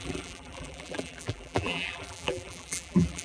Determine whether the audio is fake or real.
fake